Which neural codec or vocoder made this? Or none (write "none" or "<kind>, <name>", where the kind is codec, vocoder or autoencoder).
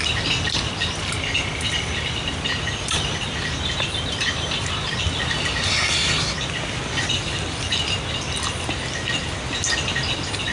none